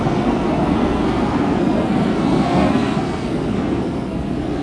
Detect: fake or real fake